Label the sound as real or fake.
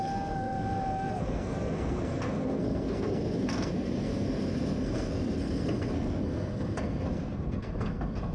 fake